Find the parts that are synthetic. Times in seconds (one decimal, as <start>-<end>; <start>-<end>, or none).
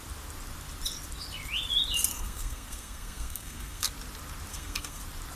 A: 2.1-3.9; 4.5-5.0